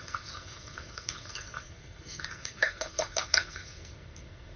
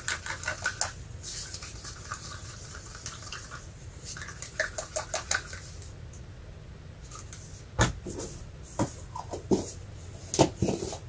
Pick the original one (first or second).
second